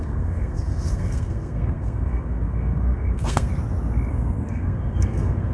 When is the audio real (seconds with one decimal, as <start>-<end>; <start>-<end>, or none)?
3.5-4.1